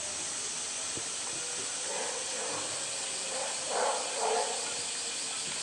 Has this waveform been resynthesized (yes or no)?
no